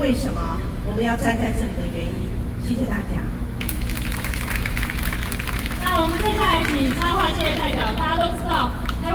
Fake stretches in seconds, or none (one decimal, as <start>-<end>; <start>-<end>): 0.0-7.8; 8.6-9.1